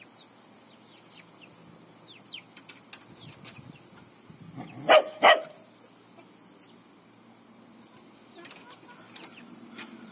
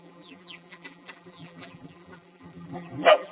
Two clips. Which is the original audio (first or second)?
first